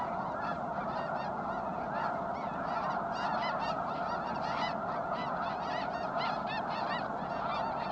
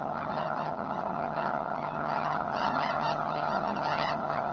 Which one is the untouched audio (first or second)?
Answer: first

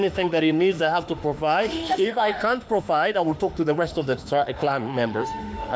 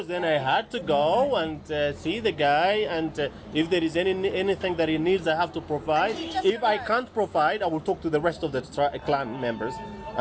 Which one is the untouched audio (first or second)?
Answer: second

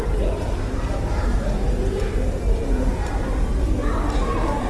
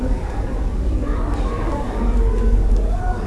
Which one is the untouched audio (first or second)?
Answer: first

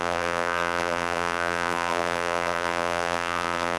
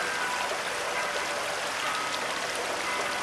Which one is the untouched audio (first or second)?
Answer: second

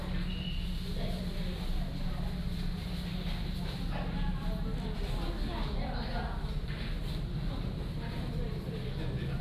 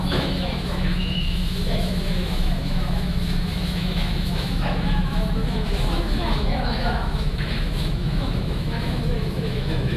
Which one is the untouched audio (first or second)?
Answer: first